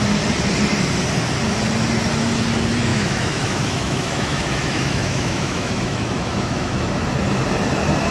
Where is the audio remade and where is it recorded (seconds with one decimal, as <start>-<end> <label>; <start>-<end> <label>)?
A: 0.0-2.9 recorded; 2.9-6.9 remade; 6.9-8.1 recorded